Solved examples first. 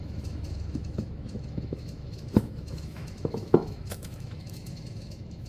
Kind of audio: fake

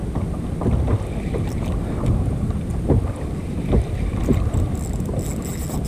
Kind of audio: real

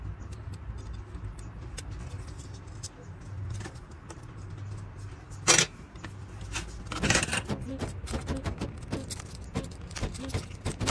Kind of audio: real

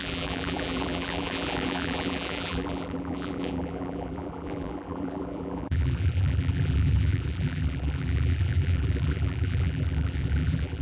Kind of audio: fake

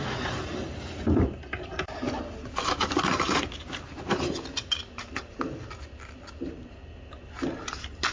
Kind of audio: real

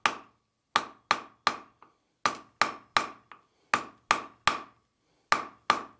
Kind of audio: real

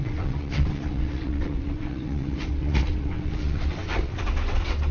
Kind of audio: fake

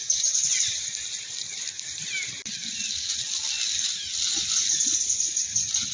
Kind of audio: real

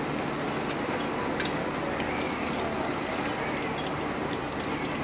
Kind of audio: real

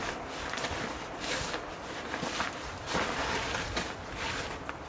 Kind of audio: real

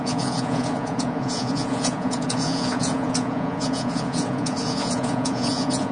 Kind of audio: fake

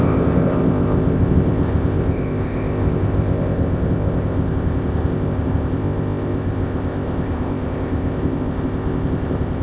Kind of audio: fake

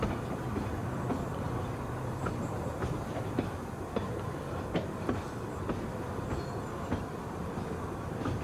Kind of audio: real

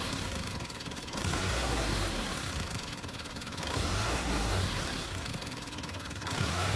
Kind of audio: fake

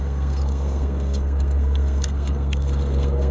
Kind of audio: fake